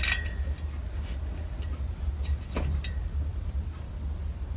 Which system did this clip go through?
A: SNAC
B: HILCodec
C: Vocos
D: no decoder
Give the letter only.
D